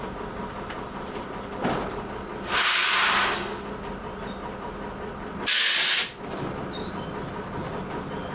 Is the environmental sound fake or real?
real